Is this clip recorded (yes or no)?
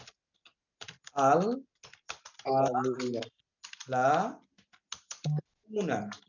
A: yes